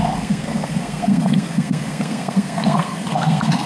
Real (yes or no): no